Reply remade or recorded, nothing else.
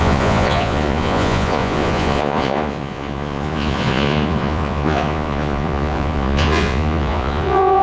remade